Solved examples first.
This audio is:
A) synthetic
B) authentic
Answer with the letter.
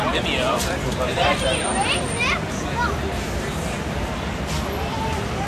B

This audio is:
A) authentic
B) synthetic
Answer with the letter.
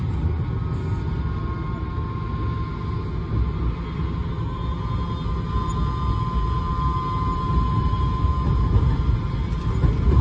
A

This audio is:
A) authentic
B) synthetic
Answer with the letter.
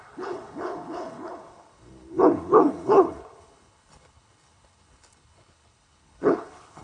B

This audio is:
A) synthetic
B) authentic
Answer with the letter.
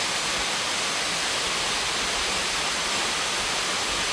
B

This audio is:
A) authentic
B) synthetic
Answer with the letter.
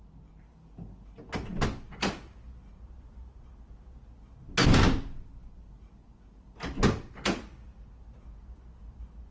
A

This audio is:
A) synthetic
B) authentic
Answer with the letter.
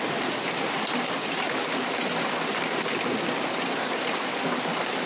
B